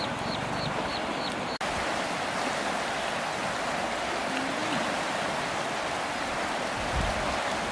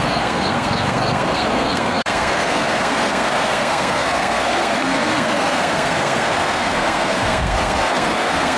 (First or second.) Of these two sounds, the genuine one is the first